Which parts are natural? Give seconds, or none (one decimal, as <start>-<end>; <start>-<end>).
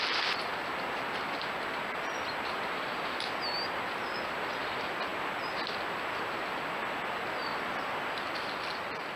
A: 0.0-9.2